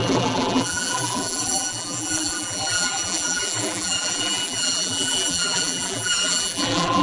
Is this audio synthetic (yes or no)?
yes